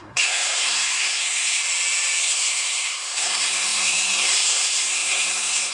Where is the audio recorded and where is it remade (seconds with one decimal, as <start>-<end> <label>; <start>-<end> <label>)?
0.0-1.6 remade; 1.6-2.2 recorded; 2.2-5.7 remade